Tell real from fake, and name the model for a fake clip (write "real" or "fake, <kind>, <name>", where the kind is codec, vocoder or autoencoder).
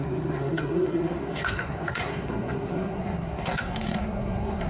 fake, codec, SNAC